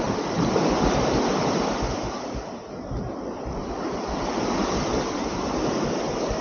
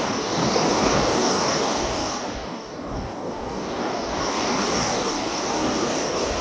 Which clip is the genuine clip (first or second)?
first